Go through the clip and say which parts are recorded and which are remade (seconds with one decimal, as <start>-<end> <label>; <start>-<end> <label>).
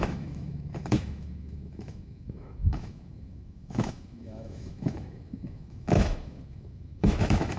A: 0.0-7.6 remade